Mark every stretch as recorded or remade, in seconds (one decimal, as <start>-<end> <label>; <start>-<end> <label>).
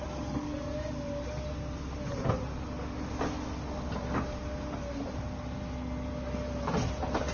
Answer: 0.0-7.3 recorded